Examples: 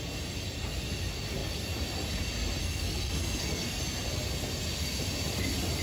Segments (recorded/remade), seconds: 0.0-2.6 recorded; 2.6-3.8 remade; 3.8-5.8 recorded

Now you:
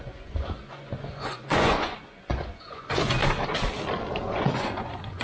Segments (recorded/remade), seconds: 0.0-3.2 remade; 3.2-4.1 recorded; 4.1-5.2 remade

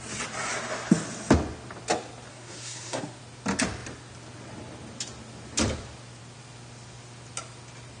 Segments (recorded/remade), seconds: 0.0-2.3 recorded; 2.3-3.2 remade; 3.2-8.0 recorded

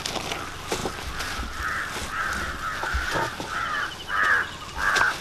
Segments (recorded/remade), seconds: 0.0-5.2 recorded

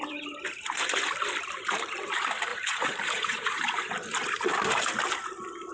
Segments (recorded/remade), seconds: 0.0-2.5 recorded; 2.5-3.9 remade; 3.9-5.7 recorded